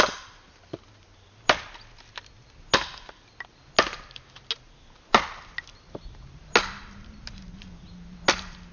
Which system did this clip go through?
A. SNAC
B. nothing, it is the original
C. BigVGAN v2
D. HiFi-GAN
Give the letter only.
B